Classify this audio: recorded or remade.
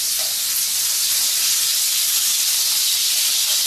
recorded